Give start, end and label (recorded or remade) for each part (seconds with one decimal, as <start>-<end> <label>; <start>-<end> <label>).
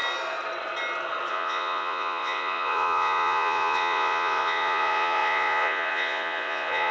0.0-1.3 recorded; 1.3-6.9 remade